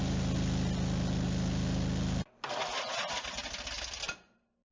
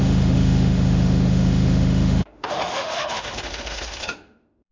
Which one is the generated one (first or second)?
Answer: second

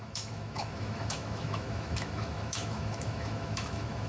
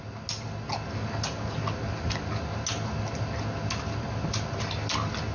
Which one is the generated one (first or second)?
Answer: first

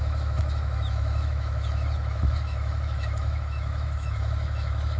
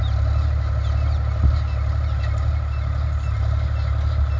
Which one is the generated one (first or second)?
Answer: first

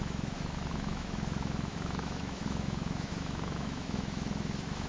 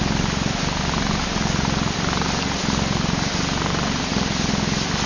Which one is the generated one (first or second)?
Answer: first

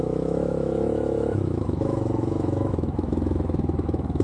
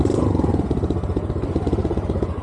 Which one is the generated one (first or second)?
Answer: first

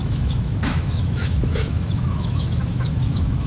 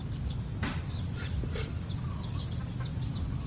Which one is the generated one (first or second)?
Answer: first